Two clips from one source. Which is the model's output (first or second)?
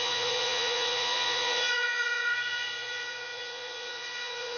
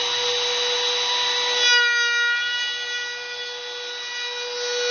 first